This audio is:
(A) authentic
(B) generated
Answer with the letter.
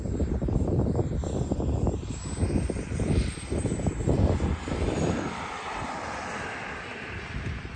B